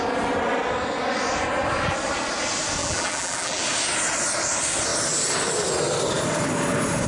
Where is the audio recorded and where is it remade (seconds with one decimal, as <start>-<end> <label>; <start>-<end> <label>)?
0.0-2.8 recorded; 2.8-3.6 remade; 3.6-7.1 recorded